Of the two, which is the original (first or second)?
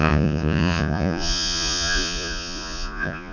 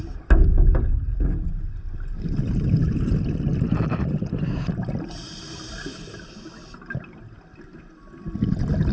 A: second